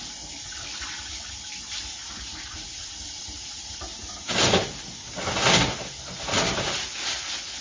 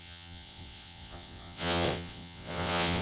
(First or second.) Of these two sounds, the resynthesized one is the second